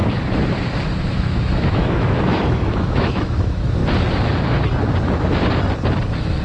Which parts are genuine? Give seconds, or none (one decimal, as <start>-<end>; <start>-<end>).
0.0-1.0; 3.8-6.4

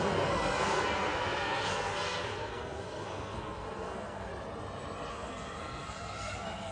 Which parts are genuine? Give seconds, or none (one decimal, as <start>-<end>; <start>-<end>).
4.3-5.1